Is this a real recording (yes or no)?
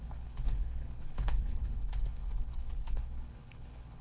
no